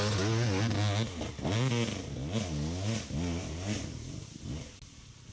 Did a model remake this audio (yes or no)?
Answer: no